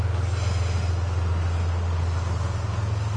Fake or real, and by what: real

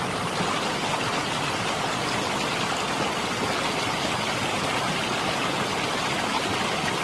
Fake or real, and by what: real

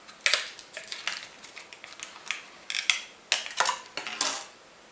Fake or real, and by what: real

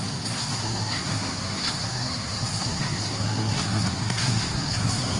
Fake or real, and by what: fake, codec, SNAC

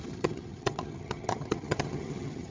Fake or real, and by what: fake, vocoder, HiFi-GAN